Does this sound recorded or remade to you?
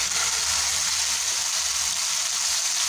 recorded